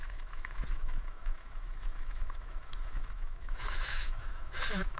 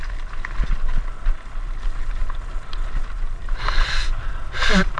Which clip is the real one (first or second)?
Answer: second